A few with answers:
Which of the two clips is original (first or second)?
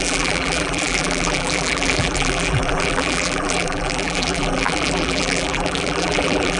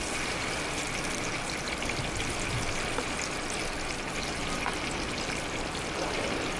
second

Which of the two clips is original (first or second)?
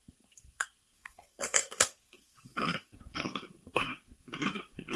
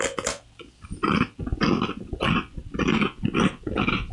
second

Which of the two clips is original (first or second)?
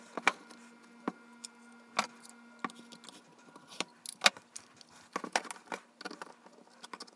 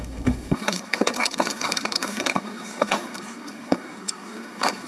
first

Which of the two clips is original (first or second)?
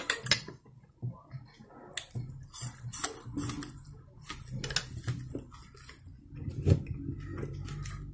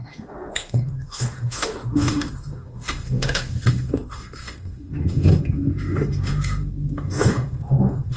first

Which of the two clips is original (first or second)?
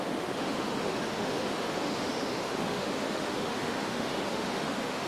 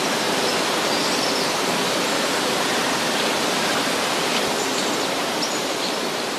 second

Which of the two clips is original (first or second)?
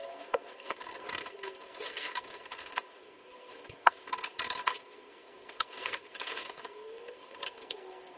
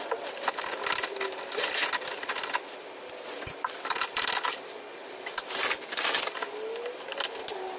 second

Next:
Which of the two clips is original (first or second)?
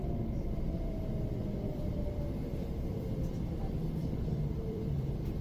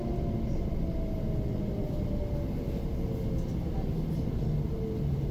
second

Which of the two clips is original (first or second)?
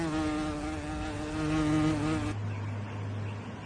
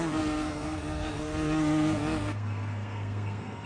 first